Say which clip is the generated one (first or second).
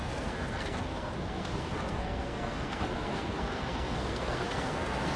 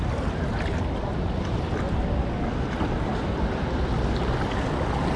first